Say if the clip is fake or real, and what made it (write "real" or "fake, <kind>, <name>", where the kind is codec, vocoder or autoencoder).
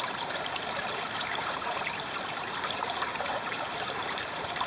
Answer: fake, vocoder, BigVGAN v2